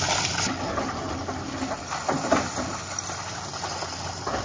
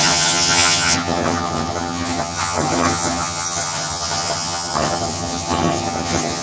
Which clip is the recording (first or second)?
first